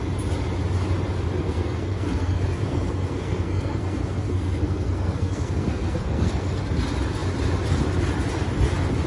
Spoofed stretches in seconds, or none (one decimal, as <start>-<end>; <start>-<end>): 1.4-6.6